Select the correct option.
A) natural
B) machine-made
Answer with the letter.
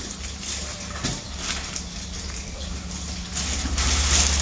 A